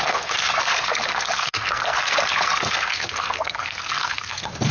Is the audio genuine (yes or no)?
no